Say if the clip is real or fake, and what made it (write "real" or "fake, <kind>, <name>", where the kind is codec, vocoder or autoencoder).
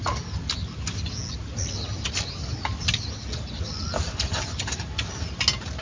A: real